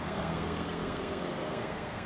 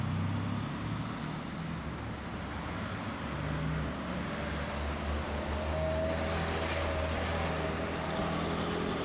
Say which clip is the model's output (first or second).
first